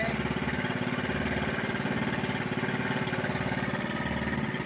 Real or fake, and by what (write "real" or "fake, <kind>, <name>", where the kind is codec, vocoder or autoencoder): real